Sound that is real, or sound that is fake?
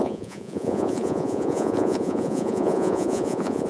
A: fake